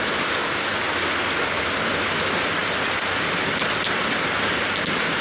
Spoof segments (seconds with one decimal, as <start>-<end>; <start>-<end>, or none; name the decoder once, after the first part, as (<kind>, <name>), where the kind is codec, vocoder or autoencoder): 0.4-2.0 (vocoder, BigVGAN v2); 2.6-4.5